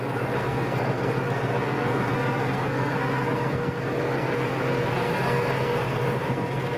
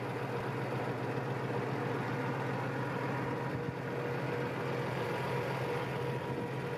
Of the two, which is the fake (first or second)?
first